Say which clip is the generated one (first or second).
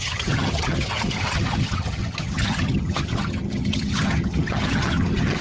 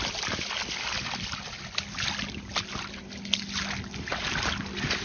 first